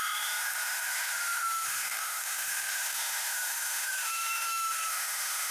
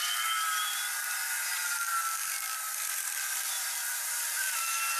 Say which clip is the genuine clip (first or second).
second